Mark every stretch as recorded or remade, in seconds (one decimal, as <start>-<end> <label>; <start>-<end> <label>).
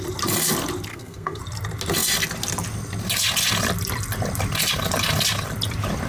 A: 0.0-0.9 recorded; 0.9-1.4 remade; 1.4-6.1 recorded